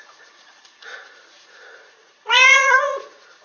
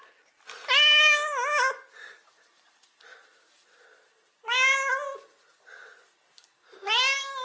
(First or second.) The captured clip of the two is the second